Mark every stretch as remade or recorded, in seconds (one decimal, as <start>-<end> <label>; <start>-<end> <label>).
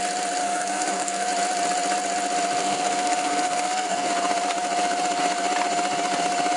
0.0-0.4 recorded; 0.4-1.3 remade; 1.3-2.6 recorded; 2.6-4.1 remade; 4.1-6.6 recorded